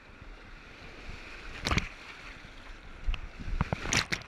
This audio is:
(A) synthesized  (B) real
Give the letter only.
B